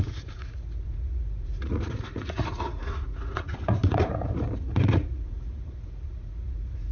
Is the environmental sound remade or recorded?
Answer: remade